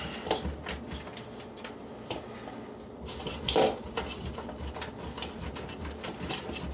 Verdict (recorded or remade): recorded